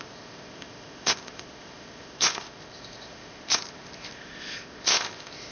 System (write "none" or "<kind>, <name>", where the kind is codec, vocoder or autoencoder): codec, ZipCodec